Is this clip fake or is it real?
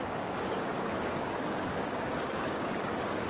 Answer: fake